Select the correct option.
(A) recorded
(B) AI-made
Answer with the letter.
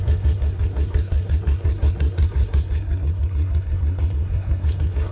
B